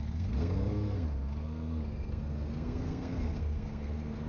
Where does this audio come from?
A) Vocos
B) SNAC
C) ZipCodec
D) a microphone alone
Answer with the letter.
B